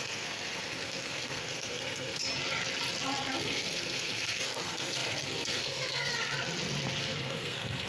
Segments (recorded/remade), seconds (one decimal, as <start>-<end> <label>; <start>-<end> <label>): 0.0-2.3 remade; 2.3-3.3 recorded; 3.3-6.1 remade; 6.1-7.0 recorded; 7.0-7.9 remade